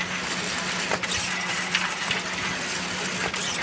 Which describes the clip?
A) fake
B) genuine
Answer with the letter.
B